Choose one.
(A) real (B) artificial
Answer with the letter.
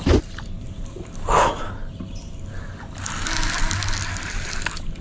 A